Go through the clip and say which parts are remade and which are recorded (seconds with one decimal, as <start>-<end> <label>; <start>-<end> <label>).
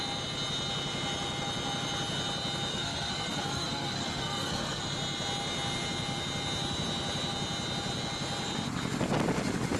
0.0-2.7 recorded; 2.7-4.8 remade; 4.8-9.8 recorded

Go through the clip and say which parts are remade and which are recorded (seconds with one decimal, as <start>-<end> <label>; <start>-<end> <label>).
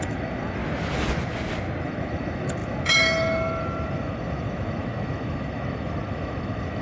0.0-0.6 remade; 0.6-1.8 recorded; 1.8-6.8 remade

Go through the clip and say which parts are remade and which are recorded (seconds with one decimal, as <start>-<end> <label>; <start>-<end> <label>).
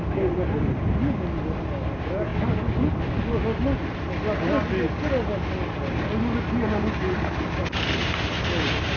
0.0-9.0 recorded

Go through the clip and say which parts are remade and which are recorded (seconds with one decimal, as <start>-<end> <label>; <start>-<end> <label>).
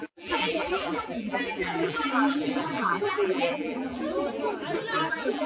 0.0-4.0 remade; 4.0-5.1 recorded; 5.1-5.5 remade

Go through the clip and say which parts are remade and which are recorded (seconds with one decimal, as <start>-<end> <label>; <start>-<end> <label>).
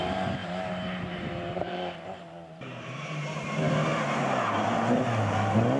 0.0-3.9 remade; 3.9-5.8 recorded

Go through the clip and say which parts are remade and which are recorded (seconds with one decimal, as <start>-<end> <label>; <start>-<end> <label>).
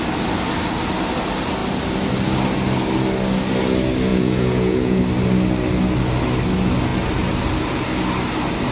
0.0-4.1 recorded; 4.1-5.0 remade; 5.0-8.7 recorded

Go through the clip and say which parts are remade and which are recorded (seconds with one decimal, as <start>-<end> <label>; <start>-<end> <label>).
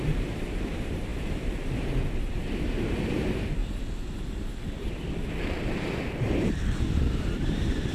0.0-3.6 remade; 3.6-5.6 recorded; 5.6-7.9 remade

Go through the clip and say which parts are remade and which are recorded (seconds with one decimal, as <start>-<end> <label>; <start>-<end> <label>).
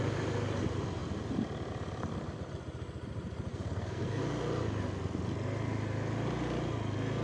0.0-3.5 recorded; 3.5-4.2 remade; 4.2-7.2 recorded